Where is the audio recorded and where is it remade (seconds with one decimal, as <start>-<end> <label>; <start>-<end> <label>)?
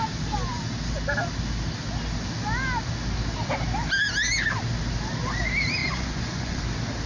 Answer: 0.0-5.8 recorded; 5.8-6.6 remade; 6.6-7.1 recorded